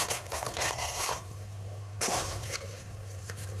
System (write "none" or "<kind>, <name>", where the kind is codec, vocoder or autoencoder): codec, SNAC